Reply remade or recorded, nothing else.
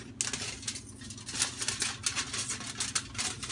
recorded